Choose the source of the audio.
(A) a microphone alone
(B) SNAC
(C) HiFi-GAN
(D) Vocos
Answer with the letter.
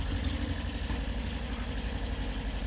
A